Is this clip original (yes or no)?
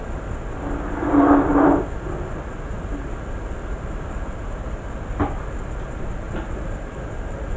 yes